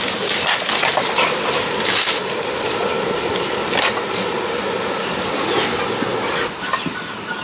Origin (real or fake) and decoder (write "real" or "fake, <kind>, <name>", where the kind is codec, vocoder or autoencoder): real